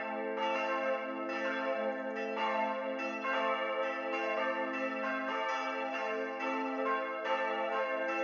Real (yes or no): yes